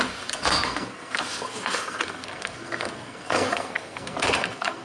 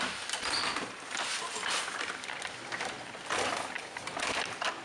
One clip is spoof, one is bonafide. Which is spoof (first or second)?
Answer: first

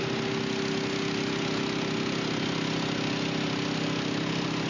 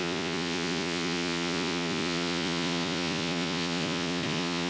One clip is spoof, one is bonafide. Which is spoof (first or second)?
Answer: second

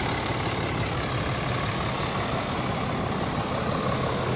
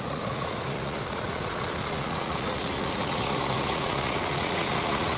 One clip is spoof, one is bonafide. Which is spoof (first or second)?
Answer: second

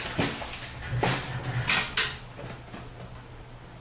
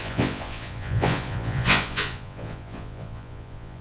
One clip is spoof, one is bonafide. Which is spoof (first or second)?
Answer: second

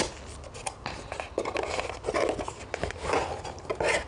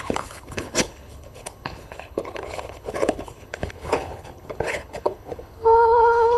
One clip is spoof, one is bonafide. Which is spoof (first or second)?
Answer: second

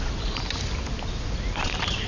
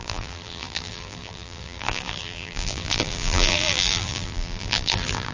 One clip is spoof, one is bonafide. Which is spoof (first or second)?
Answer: second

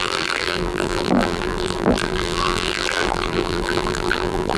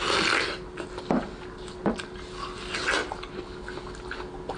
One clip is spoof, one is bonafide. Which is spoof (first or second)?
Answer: first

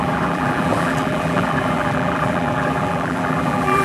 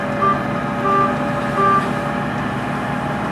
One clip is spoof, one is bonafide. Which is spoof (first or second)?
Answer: first